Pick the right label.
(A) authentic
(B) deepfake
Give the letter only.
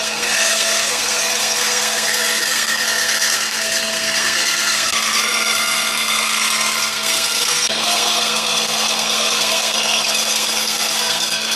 B